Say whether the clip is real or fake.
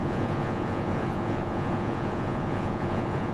fake